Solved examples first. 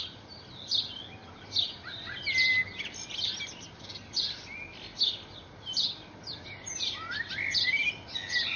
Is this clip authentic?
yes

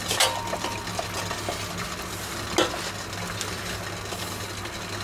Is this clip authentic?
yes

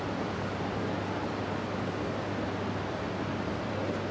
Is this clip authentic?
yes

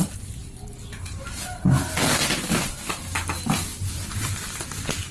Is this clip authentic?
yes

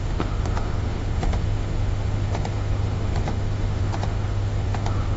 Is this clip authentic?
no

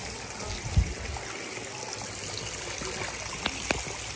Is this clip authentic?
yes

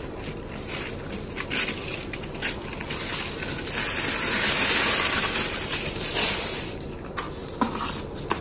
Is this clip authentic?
no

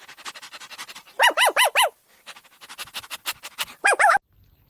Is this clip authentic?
yes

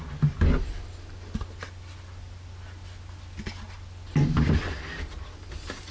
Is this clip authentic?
yes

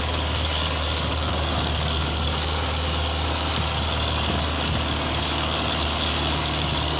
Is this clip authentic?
no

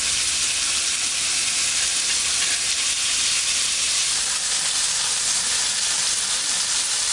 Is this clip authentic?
yes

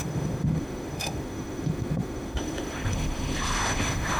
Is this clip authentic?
no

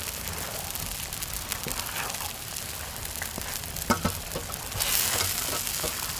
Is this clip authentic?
yes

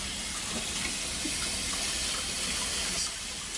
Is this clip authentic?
yes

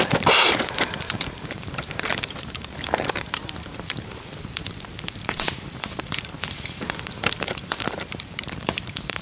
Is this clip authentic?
no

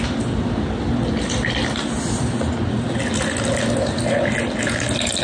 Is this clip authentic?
yes